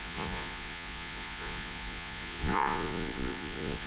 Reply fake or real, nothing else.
fake